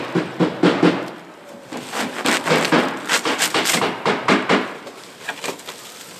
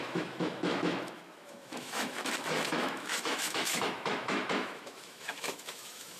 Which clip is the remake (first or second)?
second